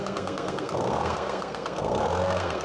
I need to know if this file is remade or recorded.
remade